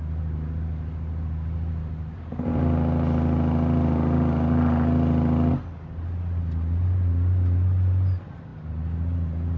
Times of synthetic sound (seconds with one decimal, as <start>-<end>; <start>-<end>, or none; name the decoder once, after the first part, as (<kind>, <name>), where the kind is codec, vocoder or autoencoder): none